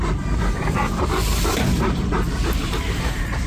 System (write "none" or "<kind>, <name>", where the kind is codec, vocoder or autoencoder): vocoder, BigVGAN v2